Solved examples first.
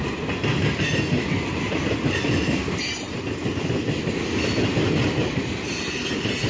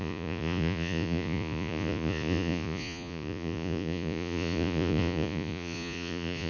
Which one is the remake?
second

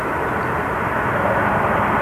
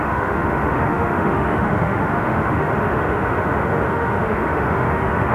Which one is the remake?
second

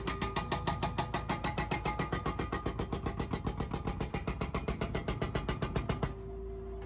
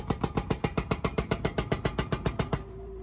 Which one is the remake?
second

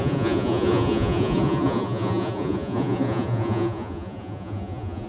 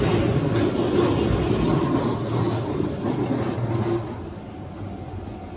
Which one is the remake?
first